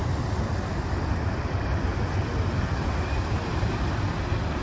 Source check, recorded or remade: recorded